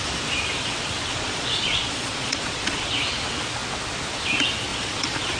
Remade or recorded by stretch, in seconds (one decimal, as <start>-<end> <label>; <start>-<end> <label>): 0.0-1.1 recorded; 1.1-2.9 remade; 2.9-4.7 recorded; 4.7-5.4 remade